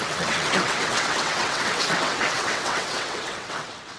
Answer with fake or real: fake